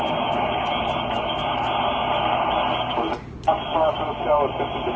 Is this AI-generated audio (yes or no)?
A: no